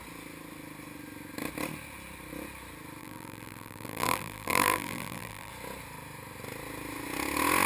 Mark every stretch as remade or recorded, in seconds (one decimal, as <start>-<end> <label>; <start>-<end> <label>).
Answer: 0.0-3.0 recorded; 3.0-5.5 remade; 5.5-7.7 recorded